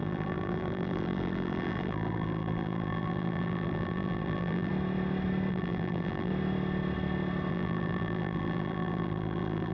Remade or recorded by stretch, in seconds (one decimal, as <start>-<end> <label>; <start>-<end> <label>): 0.0-4.7 remade; 4.7-5.5 recorded; 5.5-6.3 remade; 6.3-7.5 recorded; 7.5-9.7 remade